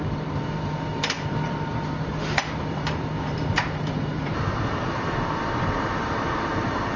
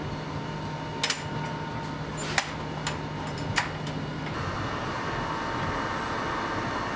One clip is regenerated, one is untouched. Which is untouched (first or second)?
second